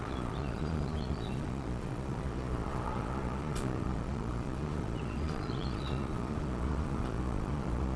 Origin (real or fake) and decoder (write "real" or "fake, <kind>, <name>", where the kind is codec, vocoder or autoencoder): fake, vocoder, Vocos